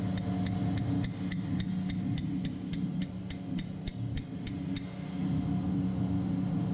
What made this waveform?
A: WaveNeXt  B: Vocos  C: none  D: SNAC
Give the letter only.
C